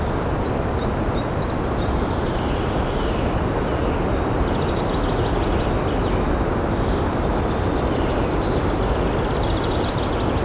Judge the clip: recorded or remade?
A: recorded